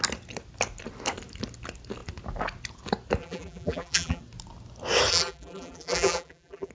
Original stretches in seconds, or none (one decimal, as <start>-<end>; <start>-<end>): 0.0-3.2; 4.2-5.1